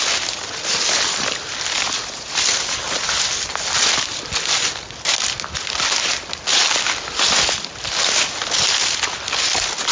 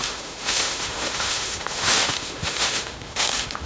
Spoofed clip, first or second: second